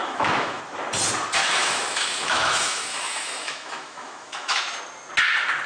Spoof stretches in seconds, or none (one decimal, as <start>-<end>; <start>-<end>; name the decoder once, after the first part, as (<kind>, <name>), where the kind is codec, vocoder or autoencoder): 0.0-0.6 (autoencoder, DAC-VAE); 1.4-4.8